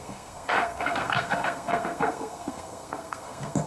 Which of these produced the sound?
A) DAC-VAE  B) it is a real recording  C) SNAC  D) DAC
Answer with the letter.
C